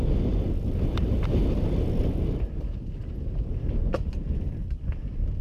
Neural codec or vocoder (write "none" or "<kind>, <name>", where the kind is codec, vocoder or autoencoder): none